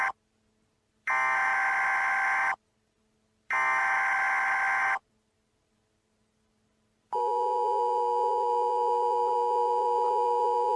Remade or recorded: recorded